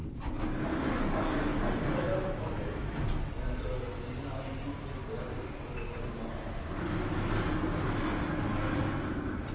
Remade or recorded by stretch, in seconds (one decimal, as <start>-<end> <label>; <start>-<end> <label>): 0.0-9.5 recorded